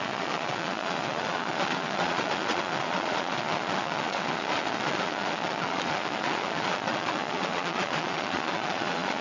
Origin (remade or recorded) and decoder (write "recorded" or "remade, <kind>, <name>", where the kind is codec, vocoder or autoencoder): remade, vocoder, Vocos